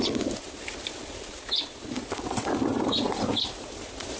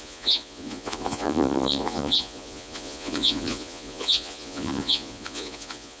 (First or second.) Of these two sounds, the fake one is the second